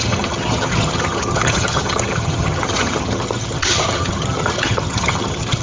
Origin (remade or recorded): remade